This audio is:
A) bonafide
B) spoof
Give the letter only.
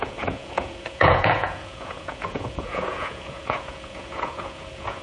B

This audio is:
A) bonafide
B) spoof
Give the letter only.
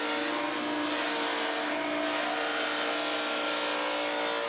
A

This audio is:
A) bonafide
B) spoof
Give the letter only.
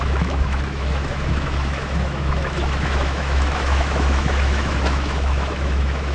B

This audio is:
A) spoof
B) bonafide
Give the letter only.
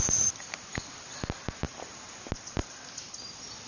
B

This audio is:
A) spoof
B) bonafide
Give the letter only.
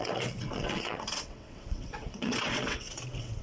A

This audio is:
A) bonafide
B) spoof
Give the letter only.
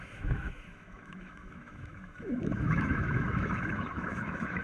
B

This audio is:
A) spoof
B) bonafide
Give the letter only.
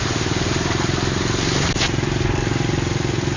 B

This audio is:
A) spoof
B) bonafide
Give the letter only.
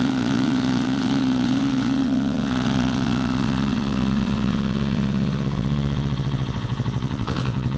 A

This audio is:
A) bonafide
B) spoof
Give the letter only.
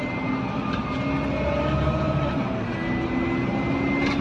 A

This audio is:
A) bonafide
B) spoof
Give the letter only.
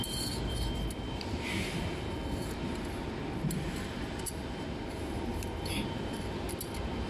A